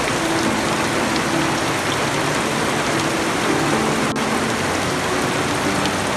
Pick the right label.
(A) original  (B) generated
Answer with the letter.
A